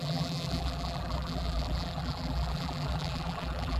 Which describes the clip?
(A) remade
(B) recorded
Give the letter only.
A